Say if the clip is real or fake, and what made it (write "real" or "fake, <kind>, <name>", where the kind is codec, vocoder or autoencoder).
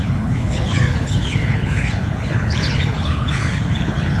fake, codec, HILCodec